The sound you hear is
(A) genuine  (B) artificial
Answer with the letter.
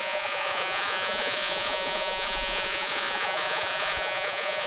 B